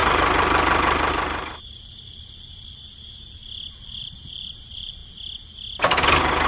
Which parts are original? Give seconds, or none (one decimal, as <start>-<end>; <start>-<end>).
3.4-4.0; 5.0-6.5